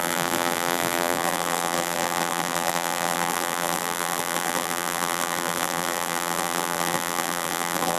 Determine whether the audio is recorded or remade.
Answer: remade